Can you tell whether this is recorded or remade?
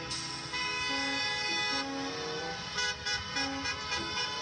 recorded